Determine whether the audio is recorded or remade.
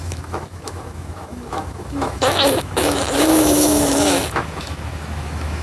remade